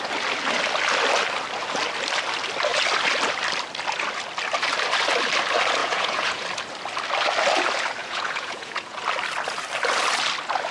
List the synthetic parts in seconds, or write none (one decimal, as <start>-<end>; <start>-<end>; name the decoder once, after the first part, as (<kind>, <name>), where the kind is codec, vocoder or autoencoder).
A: 5.8-6.4 (vocoder, Vocos); 8.0-9.0